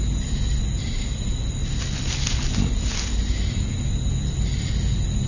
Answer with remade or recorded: recorded